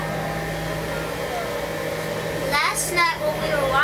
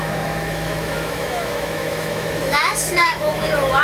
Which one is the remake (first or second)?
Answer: second